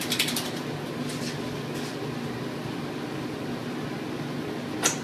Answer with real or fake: real